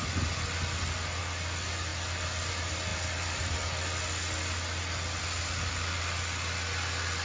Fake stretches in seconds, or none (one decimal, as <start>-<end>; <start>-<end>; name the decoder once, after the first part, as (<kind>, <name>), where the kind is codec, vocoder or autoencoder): none